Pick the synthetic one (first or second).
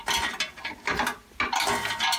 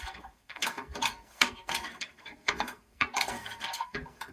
second